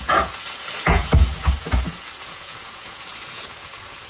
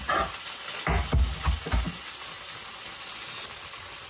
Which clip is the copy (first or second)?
first